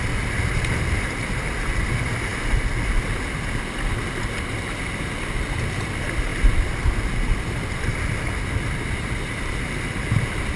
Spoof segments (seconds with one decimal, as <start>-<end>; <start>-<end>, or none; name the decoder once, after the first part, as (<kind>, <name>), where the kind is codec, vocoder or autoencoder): none